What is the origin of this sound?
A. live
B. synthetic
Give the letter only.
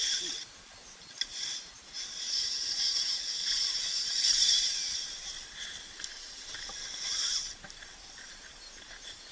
B